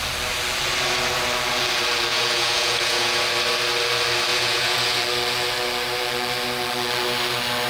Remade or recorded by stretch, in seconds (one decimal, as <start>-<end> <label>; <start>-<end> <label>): 0.0-2.1 recorded; 2.1-3.2 remade; 3.2-4.3 recorded; 4.3-5.0 remade; 5.0-7.7 recorded